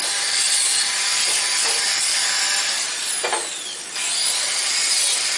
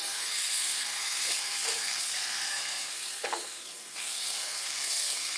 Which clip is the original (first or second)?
first